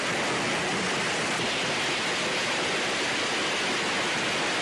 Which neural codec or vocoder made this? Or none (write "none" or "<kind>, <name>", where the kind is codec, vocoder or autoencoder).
none